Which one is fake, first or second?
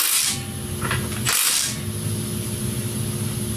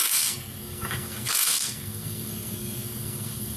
second